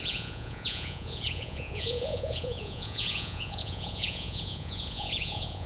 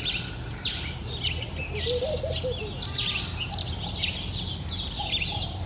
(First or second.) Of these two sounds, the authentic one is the second